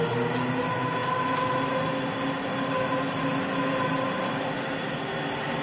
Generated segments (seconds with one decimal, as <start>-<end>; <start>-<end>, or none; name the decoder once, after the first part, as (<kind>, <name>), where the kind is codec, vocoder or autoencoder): none